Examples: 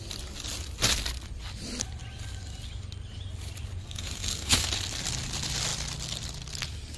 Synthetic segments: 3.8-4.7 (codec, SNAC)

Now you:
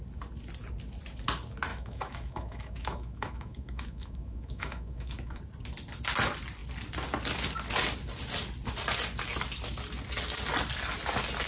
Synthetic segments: 1.7-5.4 (autoencoder, DAC-VAE)

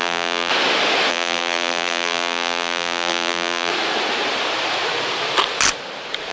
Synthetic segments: 0.0-0.5 (vocoder, BigVGAN v2); 1.1-3.7

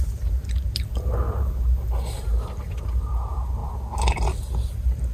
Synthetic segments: none